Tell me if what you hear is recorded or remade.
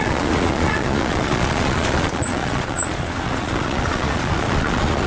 remade